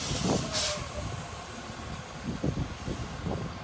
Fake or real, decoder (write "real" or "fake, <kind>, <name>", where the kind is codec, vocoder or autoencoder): real